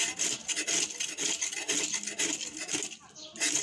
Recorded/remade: recorded